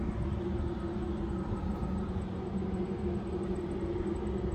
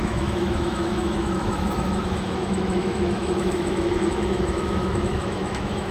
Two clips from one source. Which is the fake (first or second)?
second